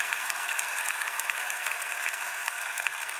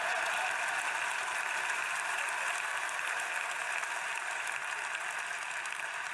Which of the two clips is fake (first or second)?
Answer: first